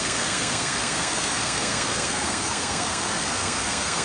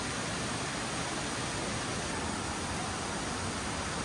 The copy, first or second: first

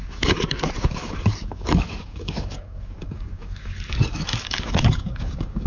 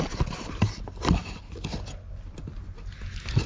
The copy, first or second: first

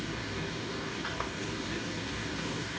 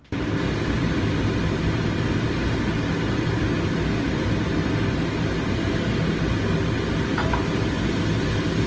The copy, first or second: first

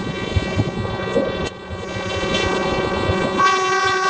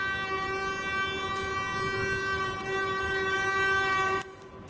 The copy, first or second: first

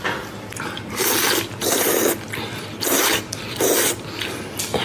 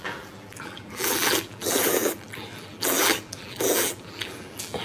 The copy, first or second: second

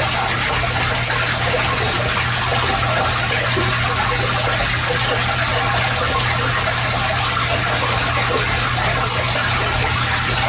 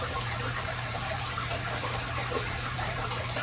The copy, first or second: second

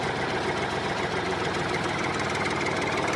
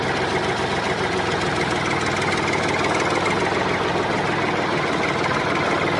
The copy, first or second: first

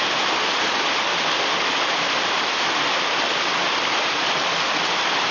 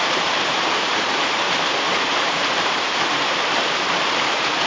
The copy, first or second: second